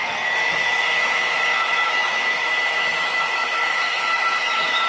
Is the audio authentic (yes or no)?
no